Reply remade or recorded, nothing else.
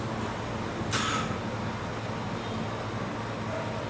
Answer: recorded